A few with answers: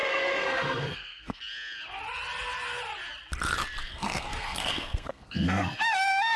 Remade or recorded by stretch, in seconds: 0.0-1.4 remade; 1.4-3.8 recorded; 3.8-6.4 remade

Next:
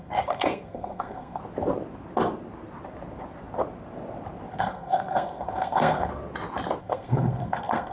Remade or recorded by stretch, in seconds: 0.0-1.4 remade; 1.4-4.6 recorded; 4.6-6.1 remade; 6.1-6.8 recorded; 6.8-7.9 remade